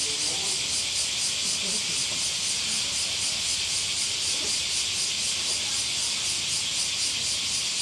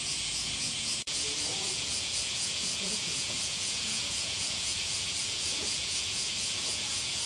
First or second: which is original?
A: first